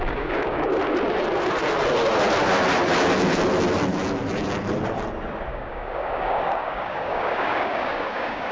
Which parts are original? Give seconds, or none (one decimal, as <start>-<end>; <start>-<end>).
0.7-5.5